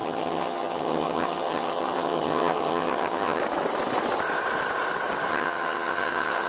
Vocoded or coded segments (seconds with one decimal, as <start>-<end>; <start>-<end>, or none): 0.0-3.4; 5.3-6.5